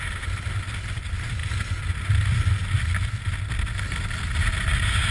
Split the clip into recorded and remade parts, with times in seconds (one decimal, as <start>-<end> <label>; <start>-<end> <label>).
0.0-5.1 recorded